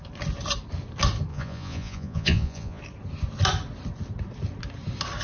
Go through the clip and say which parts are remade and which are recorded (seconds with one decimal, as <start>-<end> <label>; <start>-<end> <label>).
0.0-1.3 recorded; 1.3-2.8 remade; 2.8-5.2 recorded